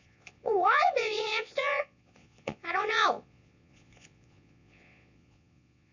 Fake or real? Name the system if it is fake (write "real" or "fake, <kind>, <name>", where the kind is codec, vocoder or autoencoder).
fake, vocoder, Vocos